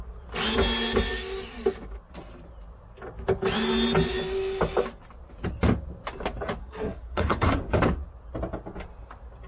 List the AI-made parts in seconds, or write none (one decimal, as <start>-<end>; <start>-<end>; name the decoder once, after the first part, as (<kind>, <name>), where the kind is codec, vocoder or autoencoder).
6.6-7.6 (codec, SNAC)

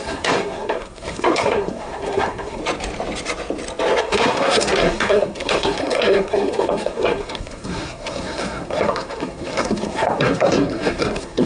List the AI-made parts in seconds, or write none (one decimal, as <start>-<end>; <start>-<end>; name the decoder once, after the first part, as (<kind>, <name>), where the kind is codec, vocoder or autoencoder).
0.0-2.6 (codec, SNAC); 4.0-11.5